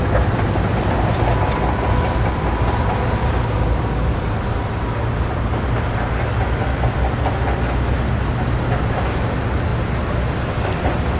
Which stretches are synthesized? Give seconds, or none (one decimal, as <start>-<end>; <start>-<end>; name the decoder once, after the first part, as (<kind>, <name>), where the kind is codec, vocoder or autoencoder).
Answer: none